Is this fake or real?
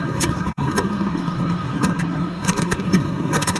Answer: fake